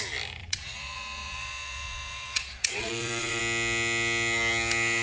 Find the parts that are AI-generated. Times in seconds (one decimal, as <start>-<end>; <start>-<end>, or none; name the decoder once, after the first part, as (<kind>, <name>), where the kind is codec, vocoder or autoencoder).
0.4-3.4 (vocoder, Vocos)